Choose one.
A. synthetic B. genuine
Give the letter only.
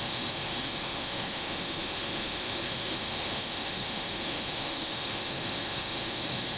A